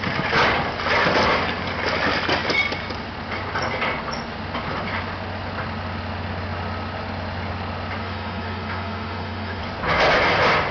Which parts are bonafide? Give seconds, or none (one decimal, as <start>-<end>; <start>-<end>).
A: 0.0-8.0; 9.6-10.7